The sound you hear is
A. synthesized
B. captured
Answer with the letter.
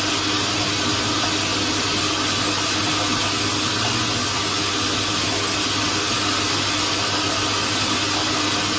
B